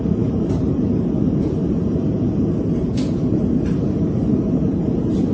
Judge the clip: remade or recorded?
remade